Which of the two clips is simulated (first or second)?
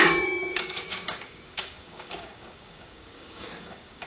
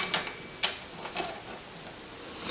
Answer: first